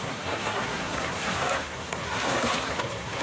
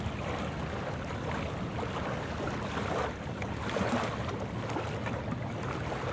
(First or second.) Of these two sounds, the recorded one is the second